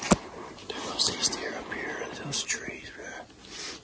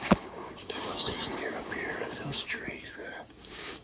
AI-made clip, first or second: second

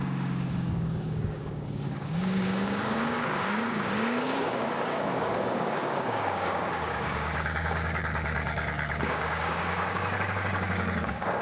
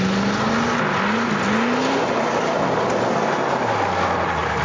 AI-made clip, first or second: first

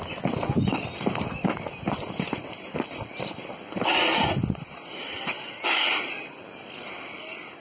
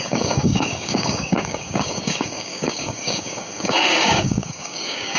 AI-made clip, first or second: second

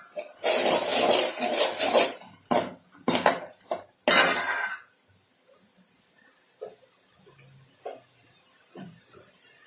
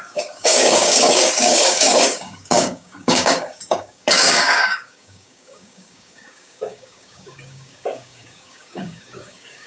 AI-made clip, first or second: second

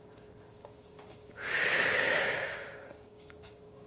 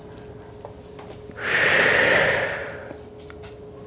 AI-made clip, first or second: first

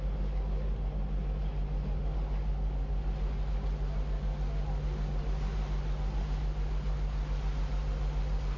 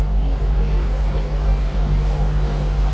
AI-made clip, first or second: second